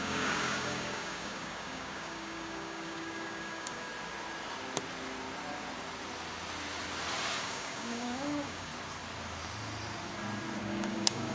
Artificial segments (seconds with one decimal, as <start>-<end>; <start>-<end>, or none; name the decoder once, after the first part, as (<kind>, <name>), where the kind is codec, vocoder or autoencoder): 0.0-3.9 (codec, DAC); 7.4-8.7; 10.6-11.3